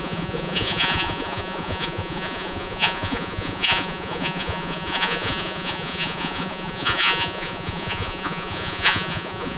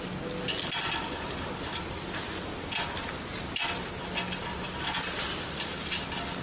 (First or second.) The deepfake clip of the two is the first